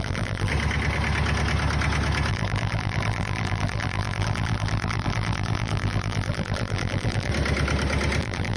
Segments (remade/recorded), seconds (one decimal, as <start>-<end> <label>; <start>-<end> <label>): 0.0-0.5 remade; 0.5-2.3 recorded; 2.3-7.3 remade; 7.3-8.2 recorded; 8.2-8.6 remade